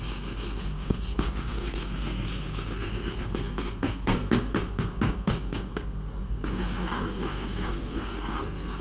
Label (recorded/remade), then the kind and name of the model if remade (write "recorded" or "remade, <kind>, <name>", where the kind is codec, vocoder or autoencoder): remade, codec, SNAC